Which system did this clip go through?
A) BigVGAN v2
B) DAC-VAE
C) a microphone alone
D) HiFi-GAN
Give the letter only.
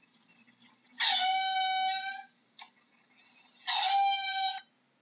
C